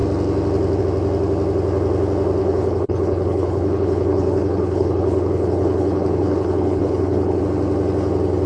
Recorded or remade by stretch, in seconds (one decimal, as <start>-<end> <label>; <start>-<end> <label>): 0.0-2.4 recorded; 2.4-7.4 remade; 7.4-8.5 recorded